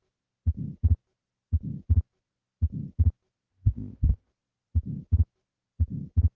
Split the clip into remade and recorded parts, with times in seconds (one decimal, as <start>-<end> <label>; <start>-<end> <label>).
0.0-3.5 recorded; 3.5-4.3 remade; 4.3-6.3 recorded